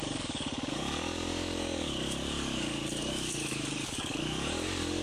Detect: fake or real fake